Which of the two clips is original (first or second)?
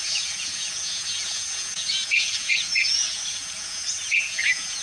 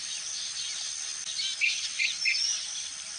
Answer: second